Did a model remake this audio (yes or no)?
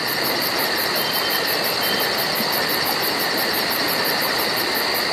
no